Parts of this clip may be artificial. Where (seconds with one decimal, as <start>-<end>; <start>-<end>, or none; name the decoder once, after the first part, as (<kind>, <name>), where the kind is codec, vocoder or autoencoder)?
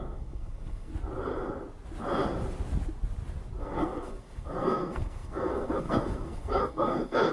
0.0-0.9 (codec, SNAC); 3.6-7.3